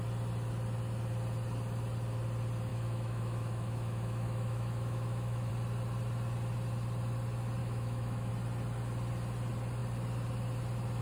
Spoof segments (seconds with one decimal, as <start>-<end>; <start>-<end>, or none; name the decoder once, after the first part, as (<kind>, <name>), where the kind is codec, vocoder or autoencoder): 2.7-5.5 (autoencoder, DAC-VAE); 7.6-8.3

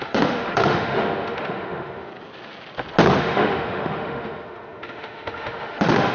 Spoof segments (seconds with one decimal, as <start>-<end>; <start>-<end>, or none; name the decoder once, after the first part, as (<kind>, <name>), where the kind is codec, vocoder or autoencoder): 0.0-2.1 (autoencoder, DAC-VAE); 3.2-6.1